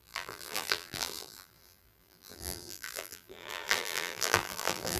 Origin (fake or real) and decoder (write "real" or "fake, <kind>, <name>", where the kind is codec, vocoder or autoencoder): fake, vocoder, BigVGAN v2